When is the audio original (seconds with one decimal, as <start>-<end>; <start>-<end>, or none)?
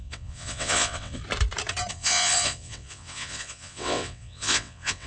1.2-1.9